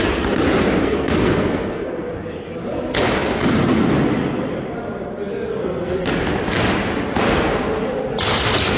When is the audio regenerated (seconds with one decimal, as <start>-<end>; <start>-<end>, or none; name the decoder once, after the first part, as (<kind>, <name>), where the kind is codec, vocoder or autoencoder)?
0.8-2.1 (codec, SNAC); 5.6-6.1